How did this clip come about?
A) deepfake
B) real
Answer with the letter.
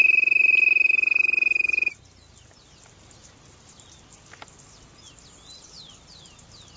B